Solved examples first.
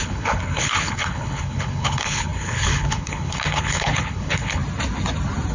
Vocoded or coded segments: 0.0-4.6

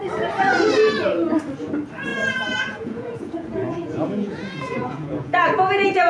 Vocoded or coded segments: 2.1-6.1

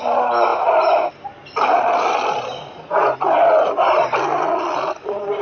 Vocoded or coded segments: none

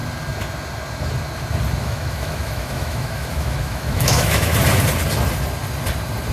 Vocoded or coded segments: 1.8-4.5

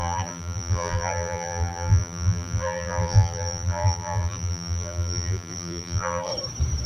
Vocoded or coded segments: 0.0-6.3

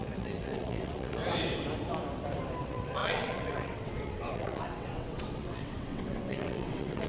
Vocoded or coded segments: 0.0-1.2; 2.6-7.1